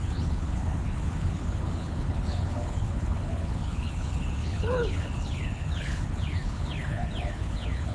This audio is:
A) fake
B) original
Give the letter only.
A